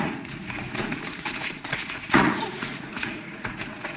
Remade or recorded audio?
remade